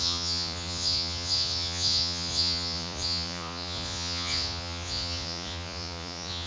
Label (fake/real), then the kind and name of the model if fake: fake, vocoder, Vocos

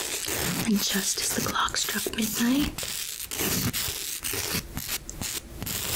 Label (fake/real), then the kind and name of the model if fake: real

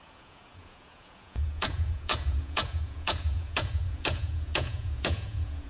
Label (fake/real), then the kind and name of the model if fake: fake, vocoder, Vocos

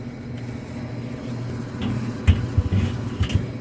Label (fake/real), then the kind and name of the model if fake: real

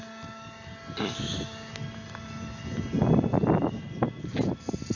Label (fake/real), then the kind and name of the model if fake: real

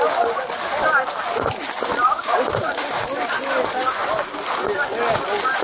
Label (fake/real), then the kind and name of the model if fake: real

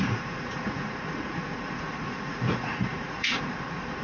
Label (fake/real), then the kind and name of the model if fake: fake, vocoder, Vocos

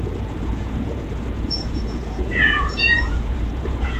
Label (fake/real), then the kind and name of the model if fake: fake, vocoder, Vocos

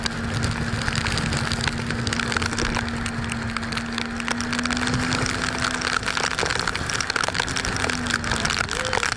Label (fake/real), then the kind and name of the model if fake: real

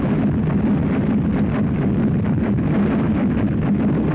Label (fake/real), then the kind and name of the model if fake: real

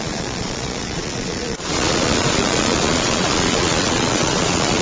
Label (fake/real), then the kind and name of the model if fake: fake, vocoder, Vocos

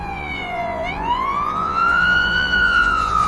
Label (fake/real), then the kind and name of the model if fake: fake, vocoder, Vocos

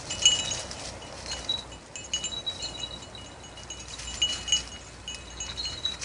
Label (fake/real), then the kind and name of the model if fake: real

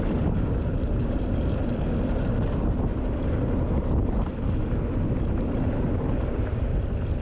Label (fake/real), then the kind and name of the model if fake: real